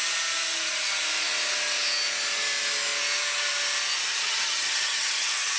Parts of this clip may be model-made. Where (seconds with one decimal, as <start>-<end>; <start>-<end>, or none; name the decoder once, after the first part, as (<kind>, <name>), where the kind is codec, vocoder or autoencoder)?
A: 4.1-5.6 (vocoder, HiFi-GAN)